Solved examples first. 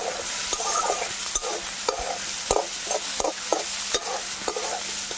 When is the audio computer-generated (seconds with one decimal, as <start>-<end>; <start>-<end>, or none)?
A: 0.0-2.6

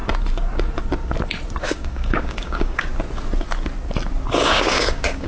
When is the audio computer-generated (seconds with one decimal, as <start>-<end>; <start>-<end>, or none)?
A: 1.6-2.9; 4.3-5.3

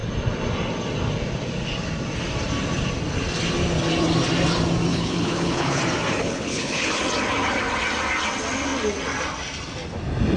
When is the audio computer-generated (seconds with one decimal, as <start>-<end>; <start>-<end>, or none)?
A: 4.9-5.8; 6.2-7.0

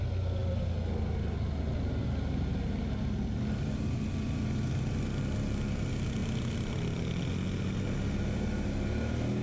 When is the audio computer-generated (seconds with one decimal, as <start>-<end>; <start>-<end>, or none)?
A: none